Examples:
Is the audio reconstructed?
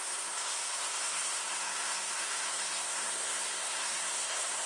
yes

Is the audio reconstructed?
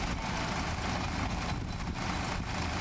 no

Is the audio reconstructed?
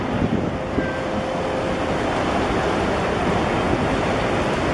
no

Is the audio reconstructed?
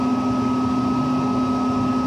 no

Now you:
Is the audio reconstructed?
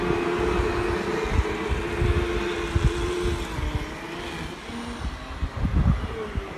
no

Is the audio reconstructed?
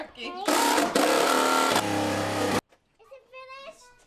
no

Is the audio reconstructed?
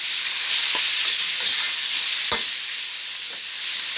no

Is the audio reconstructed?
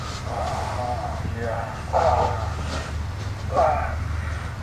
no